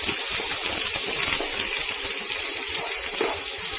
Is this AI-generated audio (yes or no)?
no